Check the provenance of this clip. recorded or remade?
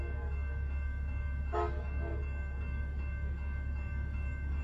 remade